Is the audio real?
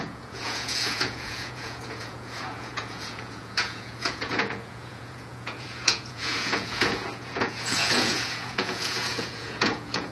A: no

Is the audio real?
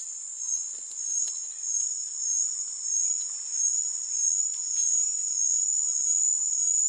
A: yes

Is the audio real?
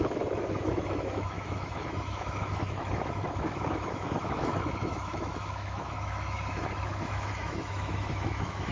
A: no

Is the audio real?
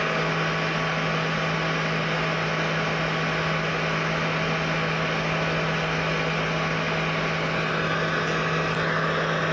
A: yes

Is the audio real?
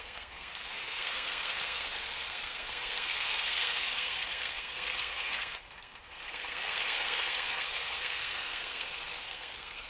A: no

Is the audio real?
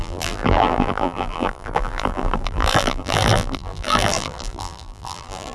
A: no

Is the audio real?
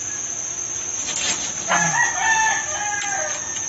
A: yes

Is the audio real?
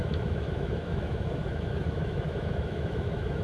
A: no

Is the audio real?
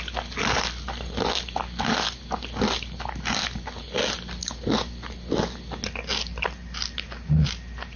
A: yes